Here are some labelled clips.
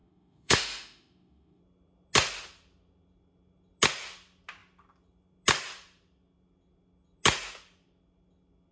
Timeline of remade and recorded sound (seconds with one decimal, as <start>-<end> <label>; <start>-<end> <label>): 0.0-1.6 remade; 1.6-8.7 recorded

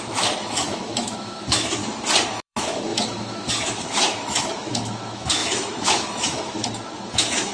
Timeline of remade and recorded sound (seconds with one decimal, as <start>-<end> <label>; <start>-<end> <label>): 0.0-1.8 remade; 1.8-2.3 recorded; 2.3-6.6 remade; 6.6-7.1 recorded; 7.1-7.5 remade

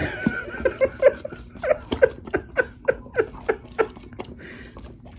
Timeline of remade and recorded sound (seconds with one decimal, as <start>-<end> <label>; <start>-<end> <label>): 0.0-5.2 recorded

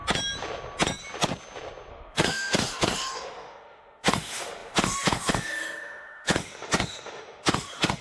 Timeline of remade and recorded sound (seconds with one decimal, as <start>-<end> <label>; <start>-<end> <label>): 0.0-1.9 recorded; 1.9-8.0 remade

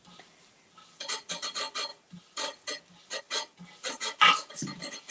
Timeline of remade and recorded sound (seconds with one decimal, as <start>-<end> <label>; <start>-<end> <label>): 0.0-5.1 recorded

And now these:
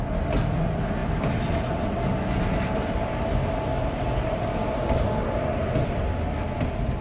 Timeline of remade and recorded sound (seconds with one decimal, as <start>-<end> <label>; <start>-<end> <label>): 0.0-7.0 recorded